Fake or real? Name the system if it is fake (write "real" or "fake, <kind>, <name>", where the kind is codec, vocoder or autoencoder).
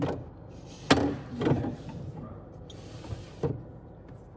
real